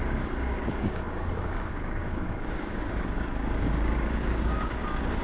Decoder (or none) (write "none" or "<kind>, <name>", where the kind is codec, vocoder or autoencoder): codec, DAC